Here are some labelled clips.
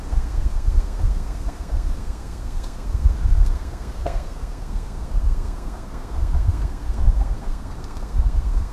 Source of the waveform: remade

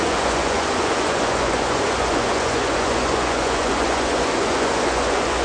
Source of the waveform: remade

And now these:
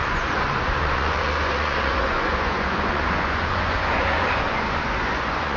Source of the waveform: remade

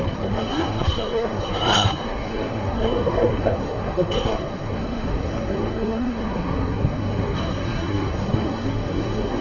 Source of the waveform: remade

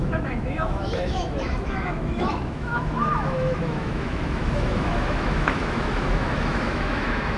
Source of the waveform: remade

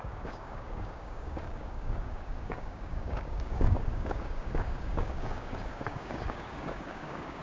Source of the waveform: remade